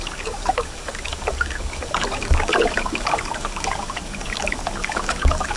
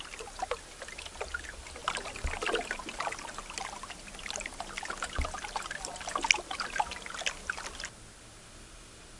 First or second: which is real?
second